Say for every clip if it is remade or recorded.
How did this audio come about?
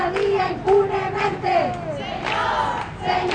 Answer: recorded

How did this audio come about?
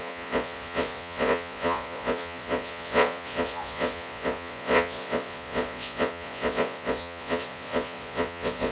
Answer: remade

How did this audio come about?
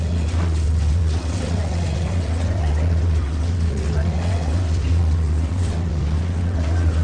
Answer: remade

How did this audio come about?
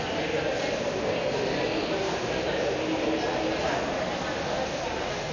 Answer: recorded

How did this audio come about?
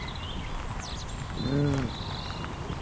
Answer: recorded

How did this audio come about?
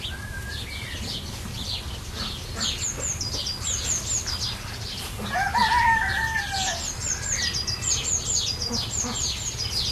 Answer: recorded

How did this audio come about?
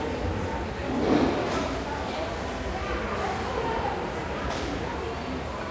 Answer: recorded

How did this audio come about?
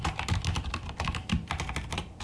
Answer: recorded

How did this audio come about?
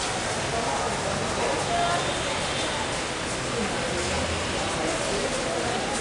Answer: recorded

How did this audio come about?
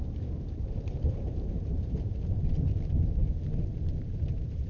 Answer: remade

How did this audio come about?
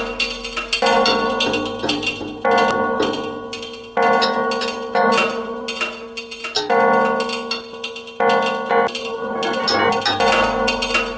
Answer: recorded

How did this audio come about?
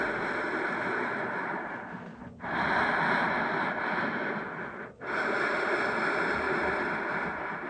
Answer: recorded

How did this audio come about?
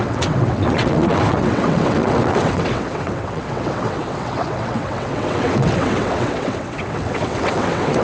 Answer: remade